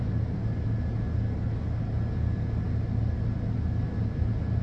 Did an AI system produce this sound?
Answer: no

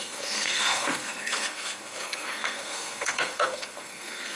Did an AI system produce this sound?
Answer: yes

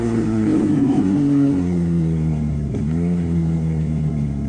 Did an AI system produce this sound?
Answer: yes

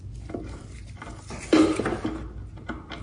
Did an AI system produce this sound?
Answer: no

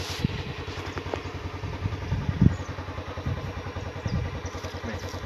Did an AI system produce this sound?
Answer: no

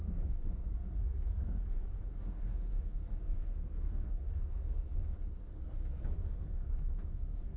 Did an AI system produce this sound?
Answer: yes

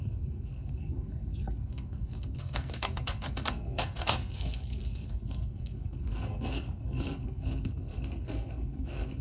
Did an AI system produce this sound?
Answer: yes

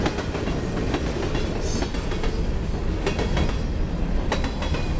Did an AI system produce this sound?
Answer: no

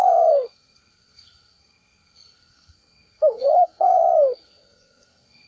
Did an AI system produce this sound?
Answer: yes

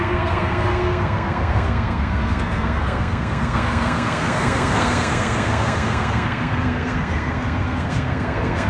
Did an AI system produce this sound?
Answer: yes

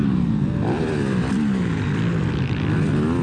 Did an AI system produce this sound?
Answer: no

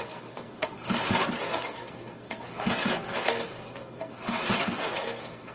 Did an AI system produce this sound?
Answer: yes